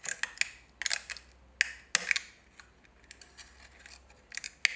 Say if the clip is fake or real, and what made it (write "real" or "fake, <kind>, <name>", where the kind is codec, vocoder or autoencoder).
real